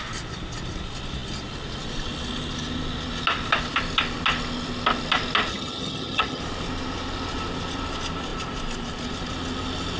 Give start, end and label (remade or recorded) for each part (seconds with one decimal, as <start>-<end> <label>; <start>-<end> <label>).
0.0-5.5 recorded; 5.5-6.4 remade; 6.4-10.0 recorded